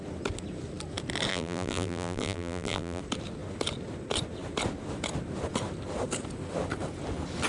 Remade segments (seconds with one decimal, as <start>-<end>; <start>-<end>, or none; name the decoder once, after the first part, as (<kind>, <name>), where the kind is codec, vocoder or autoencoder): 1.3-3.0 (vocoder, BigVGAN v2)